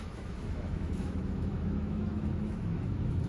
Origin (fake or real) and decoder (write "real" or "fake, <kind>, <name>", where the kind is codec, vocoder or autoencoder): fake, autoencoder, DAC-VAE